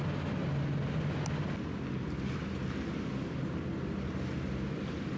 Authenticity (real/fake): real